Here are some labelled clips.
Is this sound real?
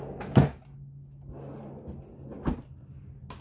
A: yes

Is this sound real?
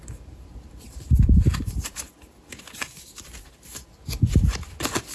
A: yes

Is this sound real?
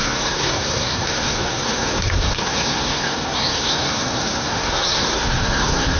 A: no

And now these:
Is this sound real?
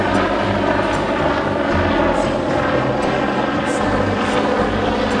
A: yes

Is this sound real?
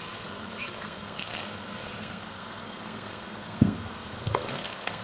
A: no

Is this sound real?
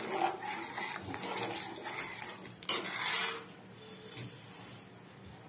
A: yes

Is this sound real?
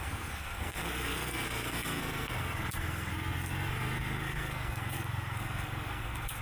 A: no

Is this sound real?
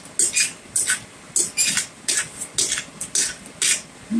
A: yes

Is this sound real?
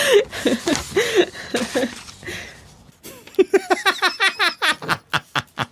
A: yes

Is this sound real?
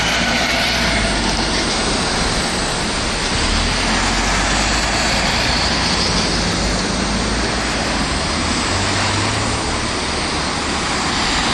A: yes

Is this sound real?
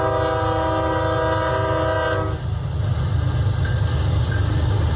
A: yes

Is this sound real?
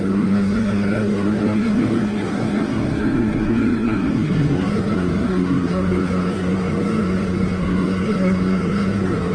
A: no